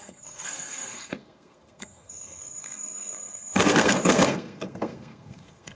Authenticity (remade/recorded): remade